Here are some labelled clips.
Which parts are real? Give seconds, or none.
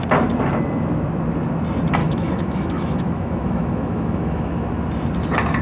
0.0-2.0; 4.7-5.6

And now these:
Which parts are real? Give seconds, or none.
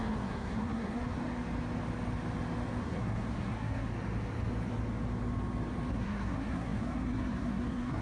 1.2-2.8; 3.9-5.9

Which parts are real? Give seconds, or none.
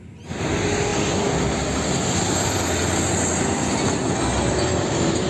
0.0-5.3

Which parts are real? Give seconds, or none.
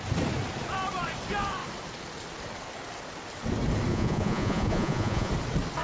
0.0-3.9; 5.3-5.8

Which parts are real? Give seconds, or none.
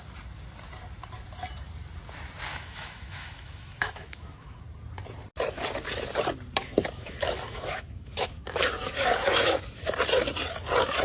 0.0-2.5; 4.6-6.6; 9.9-11.0